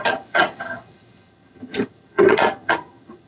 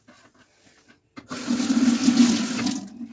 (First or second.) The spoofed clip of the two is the first